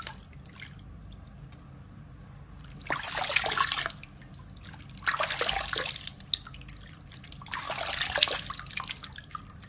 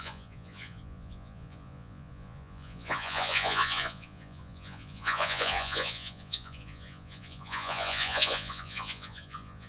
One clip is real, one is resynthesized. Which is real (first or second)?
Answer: first